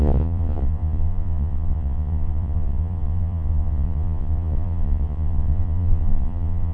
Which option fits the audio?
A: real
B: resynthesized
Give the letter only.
B